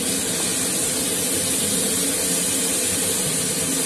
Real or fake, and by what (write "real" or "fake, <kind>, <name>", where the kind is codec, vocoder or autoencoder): real